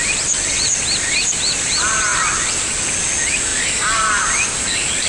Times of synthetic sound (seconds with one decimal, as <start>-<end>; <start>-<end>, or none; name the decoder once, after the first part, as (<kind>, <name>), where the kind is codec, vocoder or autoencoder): none